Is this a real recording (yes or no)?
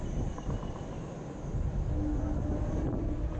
yes